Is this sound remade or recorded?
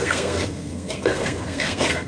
remade